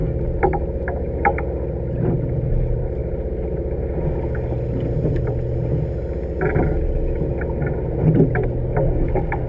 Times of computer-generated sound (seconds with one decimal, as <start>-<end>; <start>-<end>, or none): none